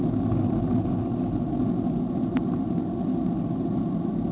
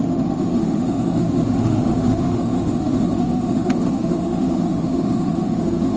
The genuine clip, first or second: first